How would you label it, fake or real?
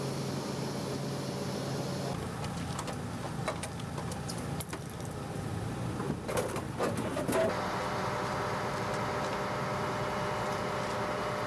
real